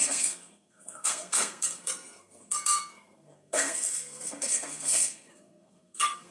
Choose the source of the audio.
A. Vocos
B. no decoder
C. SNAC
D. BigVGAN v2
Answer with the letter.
C